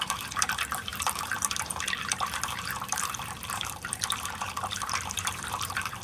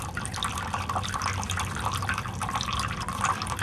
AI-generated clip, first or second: first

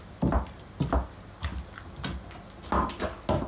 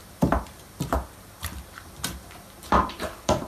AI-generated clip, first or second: second